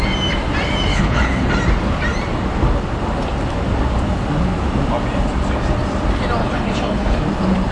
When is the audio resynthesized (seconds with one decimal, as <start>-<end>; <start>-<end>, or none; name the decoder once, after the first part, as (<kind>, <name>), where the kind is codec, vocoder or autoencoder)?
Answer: 0.9-1.5 (codec, HILCodec); 6.4-7.2